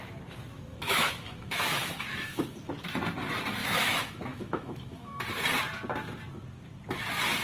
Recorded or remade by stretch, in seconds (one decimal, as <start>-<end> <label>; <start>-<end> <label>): 0.0-0.7 recorded; 0.7-2.7 remade; 2.7-3.6 recorded; 3.6-5.2 remade; 5.2-7.4 recorded